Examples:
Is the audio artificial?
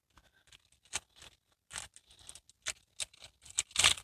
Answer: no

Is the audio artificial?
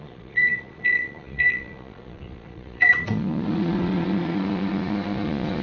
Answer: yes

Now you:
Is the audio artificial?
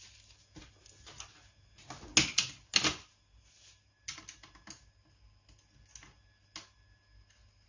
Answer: no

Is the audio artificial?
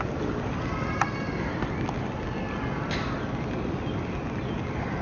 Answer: no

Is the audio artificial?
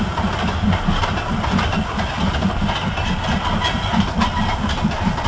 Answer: no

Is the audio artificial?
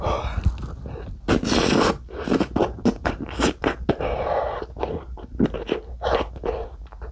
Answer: no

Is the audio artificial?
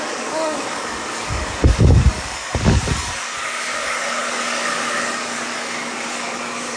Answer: yes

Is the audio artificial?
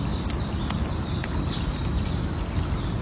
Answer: no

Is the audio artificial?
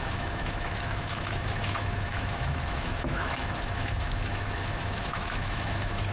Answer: yes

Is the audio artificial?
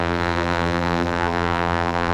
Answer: yes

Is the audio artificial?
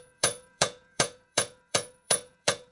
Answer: yes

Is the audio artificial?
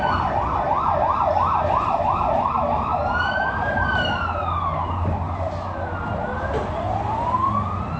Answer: no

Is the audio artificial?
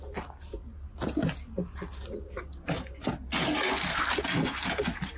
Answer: no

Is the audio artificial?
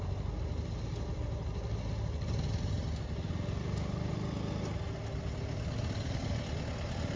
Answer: no